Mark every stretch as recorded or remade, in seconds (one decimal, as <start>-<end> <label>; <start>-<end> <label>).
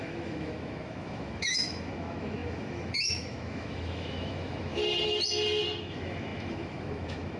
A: 0.0-4.8 remade; 4.8-5.8 recorded; 5.8-7.4 remade